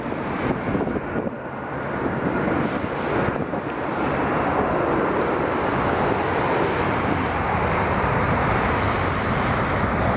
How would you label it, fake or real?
fake